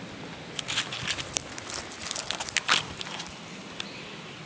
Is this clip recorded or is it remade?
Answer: recorded